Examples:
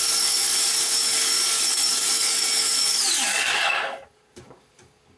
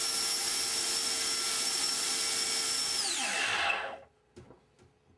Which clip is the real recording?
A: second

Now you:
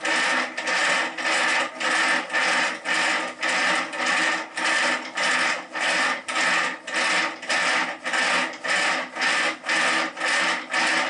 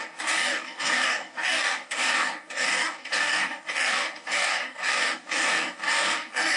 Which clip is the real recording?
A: first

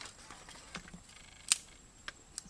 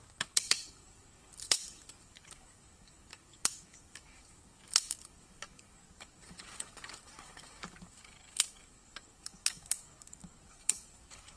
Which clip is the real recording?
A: first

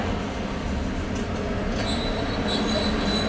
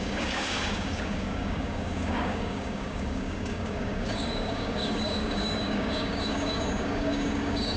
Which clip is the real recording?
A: first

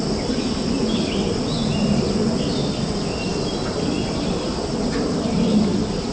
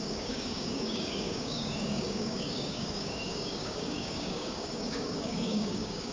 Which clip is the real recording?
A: first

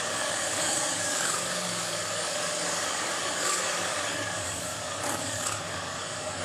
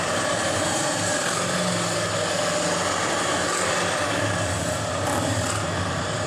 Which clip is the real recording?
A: second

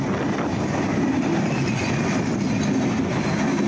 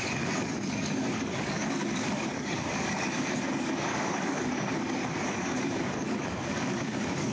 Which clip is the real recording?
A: first